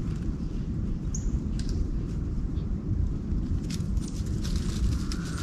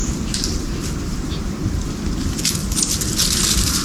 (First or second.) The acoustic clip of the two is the second